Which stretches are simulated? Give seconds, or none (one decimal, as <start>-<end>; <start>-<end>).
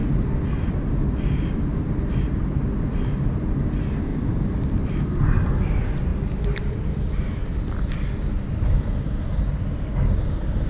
0.0-1.7; 4.1-5.0; 6.1-9.3